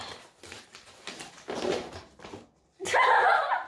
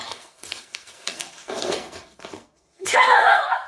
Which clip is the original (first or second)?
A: first